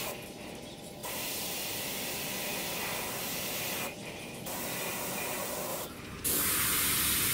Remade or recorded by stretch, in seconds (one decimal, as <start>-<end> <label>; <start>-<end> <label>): 0.0-1.0 recorded; 1.0-1.6 remade; 1.6-5.7 recorded; 5.7-6.4 remade; 6.4-7.3 recorded